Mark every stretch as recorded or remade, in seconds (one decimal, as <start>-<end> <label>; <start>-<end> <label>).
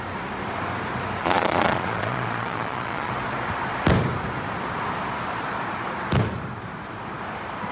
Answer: 0.0-1.2 recorded; 1.2-3.1 remade; 3.1-7.7 recorded